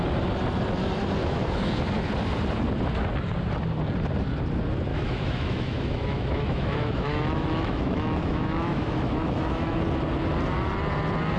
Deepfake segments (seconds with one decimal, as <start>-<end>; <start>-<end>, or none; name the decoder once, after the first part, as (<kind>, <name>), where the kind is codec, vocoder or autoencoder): 1.2-1.7 (autoencoder, DAC-VAE); 4.9-9.8